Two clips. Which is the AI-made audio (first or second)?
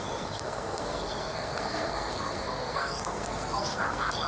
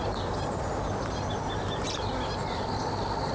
first